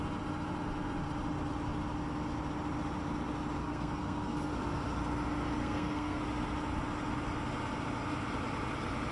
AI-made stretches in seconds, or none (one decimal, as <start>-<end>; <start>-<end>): 3.6-4.5; 5.6-6.2